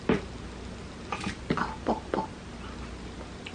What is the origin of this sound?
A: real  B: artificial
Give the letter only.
A